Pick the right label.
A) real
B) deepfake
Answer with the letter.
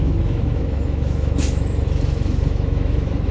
B